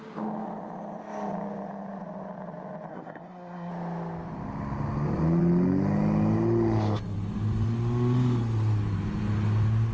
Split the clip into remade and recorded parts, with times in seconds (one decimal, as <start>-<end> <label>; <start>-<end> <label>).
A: 0.0-2.9 recorded; 2.9-3.7 remade; 3.7-9.9 recorded